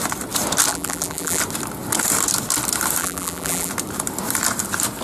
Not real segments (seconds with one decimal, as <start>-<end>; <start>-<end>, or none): 0.7-1.4; 3.0-3.7